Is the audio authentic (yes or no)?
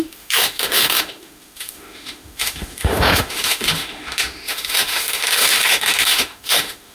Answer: no